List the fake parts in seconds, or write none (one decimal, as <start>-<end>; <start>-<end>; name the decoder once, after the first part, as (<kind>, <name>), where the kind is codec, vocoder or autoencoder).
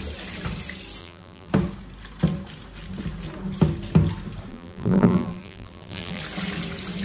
1.0-1.5 (vocoder, BigVGAN v2); 4.5-6.2